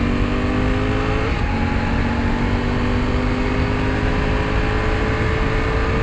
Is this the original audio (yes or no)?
yes